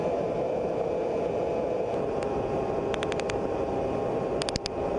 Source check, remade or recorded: recorded